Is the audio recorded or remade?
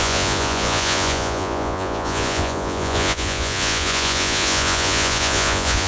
remade